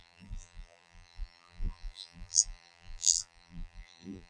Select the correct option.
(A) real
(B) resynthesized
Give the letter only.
B